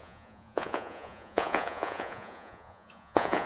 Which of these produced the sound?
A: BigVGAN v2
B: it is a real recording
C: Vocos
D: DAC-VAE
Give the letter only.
C